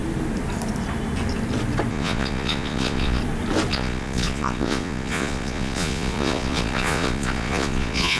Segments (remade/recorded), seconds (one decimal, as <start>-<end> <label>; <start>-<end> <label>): 0.0-1.9 recorded; 1.9-3.2 remade; 3.2-3.7 recorded; 3.7-8.2 remade